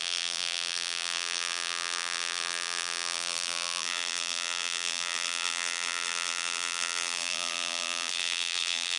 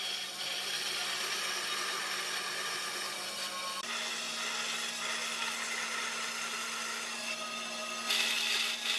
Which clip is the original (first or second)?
second